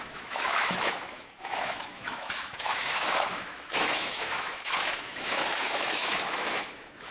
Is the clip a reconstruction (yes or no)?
yes